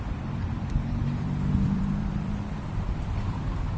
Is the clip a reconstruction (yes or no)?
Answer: yes